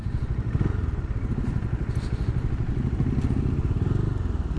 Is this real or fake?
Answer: real